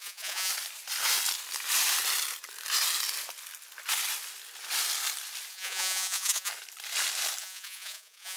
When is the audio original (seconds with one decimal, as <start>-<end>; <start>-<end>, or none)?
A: 0.5-5.5; 6.5-7.4

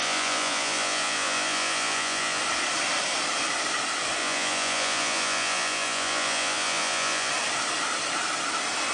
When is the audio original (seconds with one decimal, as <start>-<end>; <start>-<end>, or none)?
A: 2.4-4.2; 7.3-8.9

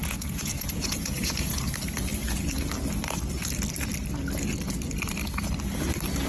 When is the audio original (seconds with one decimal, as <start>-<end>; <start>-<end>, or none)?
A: 1.7-6.3

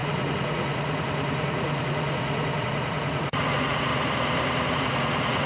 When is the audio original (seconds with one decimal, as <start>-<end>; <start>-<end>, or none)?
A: 3.9-4.7

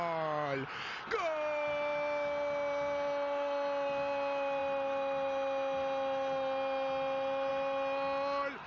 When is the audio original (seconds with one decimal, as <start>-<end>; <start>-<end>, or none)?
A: 0.0-8.7

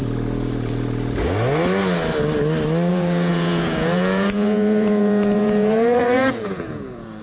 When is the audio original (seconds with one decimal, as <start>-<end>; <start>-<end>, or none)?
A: 0.0-2.9

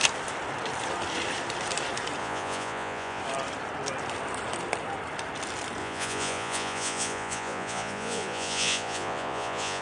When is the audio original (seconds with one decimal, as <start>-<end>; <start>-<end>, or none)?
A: 0.0-2.2; 3.2-5.8

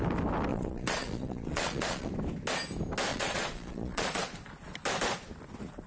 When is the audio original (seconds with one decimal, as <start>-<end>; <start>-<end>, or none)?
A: 0.0-0.5; 2.1-3.1; 4.2-5.9